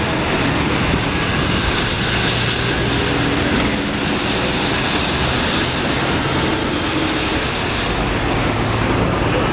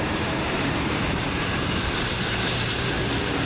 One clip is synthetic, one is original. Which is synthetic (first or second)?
second